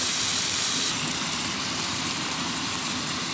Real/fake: fake